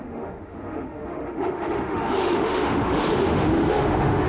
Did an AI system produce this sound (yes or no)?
yes